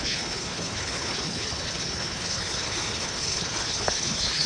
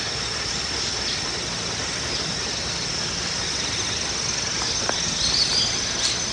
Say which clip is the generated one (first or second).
first